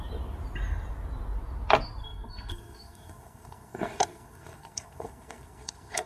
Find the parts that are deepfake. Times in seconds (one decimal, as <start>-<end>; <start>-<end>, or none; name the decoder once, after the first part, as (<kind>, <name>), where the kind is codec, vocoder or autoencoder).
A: 2.0-6.1 (codec, SNAC)